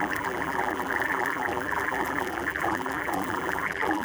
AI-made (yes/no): yes